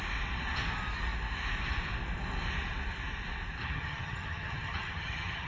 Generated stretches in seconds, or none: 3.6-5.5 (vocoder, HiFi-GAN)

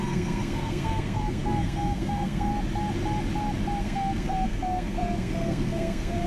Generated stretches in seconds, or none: 0.0-2.5 (codec, SNAC); 3.8-6.3